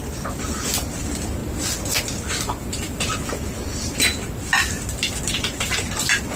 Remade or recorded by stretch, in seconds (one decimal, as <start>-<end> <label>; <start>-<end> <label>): 0.0-6.4 recorded